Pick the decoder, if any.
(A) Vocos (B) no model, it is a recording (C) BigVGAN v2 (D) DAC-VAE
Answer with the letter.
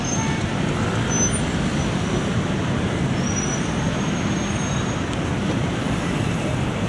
B